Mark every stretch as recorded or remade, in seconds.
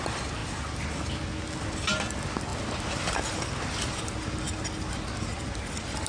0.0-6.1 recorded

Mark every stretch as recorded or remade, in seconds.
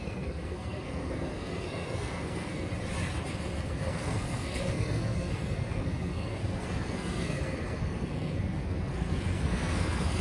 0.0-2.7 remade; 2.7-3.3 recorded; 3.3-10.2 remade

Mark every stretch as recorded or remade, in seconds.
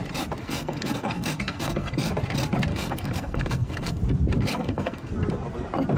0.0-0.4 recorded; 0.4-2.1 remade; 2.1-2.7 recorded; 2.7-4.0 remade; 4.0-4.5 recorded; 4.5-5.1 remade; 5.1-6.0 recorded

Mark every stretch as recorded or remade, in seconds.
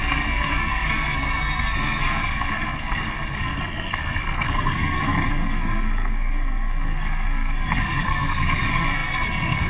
0.0-9.7 remade